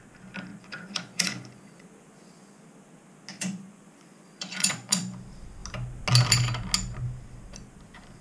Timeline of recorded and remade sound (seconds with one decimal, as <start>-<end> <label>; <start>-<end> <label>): 0.0-0.5 recorded; 0.5-2.6 remade; 2.6-3.3 recorded; 3.3-5.0 remade; 5.0-8.2 recorded